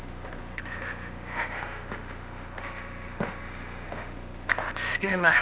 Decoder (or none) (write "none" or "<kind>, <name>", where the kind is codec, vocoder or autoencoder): autoencoder, DAC-VAE